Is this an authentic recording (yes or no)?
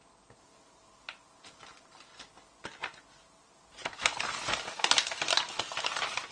yes